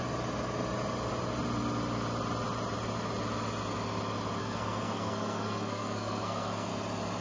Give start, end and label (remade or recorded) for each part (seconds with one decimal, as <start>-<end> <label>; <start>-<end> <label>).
0.0-4.4 recorded; 4.4-6.7 remade; 6.7-7.2 recorded